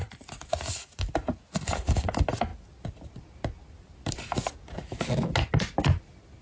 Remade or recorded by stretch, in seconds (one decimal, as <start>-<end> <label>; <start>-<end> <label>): 0.0-6.4 recorded